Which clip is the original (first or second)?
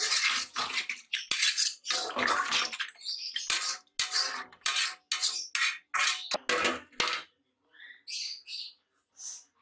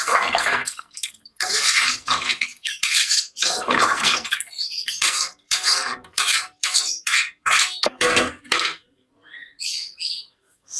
first